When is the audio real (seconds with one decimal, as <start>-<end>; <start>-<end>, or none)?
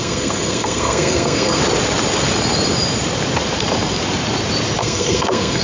1.6-4.8